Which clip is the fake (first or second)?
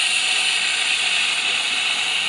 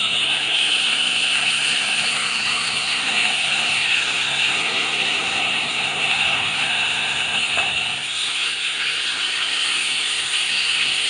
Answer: second